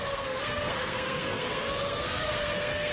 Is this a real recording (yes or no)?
no